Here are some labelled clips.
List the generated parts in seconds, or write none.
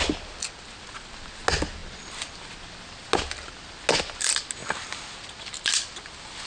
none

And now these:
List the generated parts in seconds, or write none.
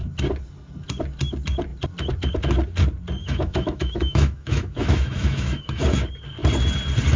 3.2-6.0 (autoencoder, DAC-VAE)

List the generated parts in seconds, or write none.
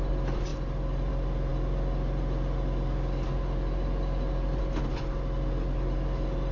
none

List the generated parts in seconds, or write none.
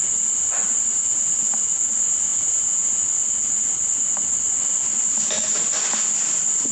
2.3-3.0 (vocoder, Vocos)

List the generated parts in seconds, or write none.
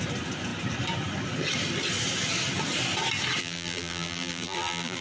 3.4-5.0 (vocoder, BigVGAN v2)